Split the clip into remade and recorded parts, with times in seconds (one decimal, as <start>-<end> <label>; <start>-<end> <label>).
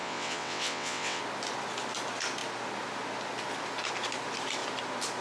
0.0-1.2 remade; 1.2-5.2 recorded